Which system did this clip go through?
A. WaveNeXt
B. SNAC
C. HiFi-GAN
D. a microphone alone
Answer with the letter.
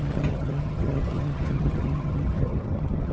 C